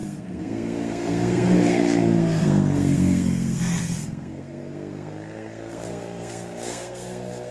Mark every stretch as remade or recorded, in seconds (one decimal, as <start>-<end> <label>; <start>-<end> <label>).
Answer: 0.0-7.5 remade